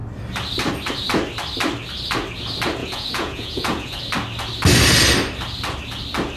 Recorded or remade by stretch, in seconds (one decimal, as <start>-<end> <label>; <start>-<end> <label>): 0.0-2.8 recorded; 2.8-4.0 remade; 4.0-6.4 recorded

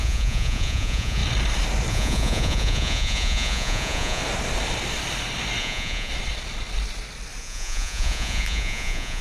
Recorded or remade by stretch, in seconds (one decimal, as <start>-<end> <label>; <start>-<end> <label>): 0.0-1.2 remade; 1.2-1.9 recorded; 1.9-4.2 remade; 4.2-5.6 recorded; 5.6-6.1 remade; 6.1-7.4 recorded; 7.4-9.2 remade

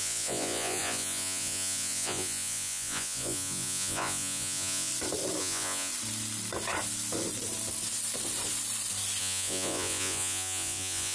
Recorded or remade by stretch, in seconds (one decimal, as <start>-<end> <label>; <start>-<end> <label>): 0.0-4.9 remade; 4.9-5.4 recorded; 5.4-5.9 remade; 5.9-9.2 recorded; 9.2-11.1 remade

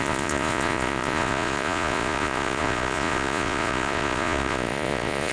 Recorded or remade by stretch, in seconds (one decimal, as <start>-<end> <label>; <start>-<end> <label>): 0.0-5.3 remade

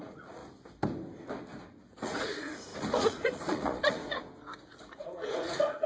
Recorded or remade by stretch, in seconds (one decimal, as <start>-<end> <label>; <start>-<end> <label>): 0.0-0.4 remade; 0.4-2.0 recorded; 2.0-4.2 remade; 4.2-4.9 recorded; 4.9-5.9 remade

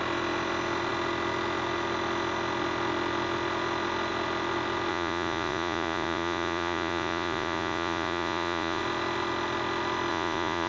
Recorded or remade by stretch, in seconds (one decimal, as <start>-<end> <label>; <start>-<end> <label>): 0.0-4.9 recorded; 4.9-8.8 remade; 8.8-10.1 recorded; 10.1-10.7 remade

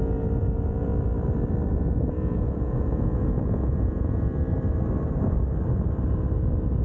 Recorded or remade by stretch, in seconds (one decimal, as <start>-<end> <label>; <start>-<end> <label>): 0.0-0.9 remade; 0.9-1.7 recorded; 1.7-4.4 remade; 4.4-6.8 recorded

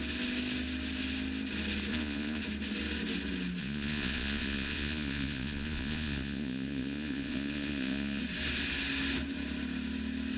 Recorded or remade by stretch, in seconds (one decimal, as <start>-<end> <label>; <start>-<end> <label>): 0.0-1.9 recorded; 1.9-2.4 remade; 2.4-3.6 recorded; 3.6-8.2 remade; 8.2-10.4 recorded